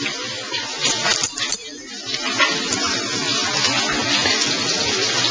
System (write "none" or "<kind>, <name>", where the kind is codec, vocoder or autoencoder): none